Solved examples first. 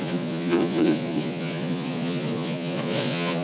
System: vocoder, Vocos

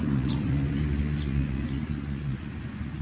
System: vocoder, Vocos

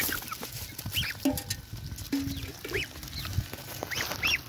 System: none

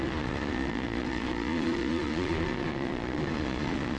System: vocoder, Vocos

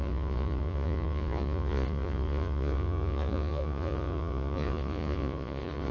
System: vocoder, Vocos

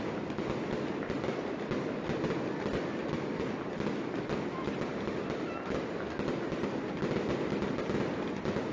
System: none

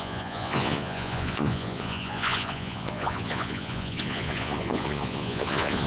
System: vocoder, Vocos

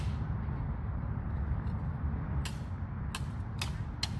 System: none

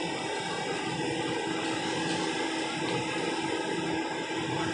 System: none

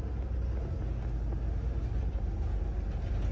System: none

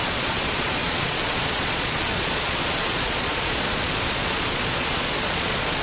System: vocoder, Vocos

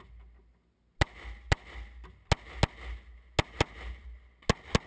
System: none